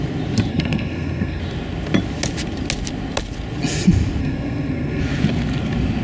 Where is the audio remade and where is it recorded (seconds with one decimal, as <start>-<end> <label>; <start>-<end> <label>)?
0.0-0.5 recorded; 0.5-1.4 remade; 1.4-4.2 recorded; 4.2-5.0 remade; 5.0-6.0 recorded